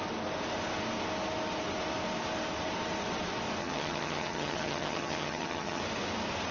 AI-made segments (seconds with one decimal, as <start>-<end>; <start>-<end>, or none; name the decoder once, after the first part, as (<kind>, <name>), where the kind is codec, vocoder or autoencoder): 3.6-5.8 (vocoder, HiFi-GAN)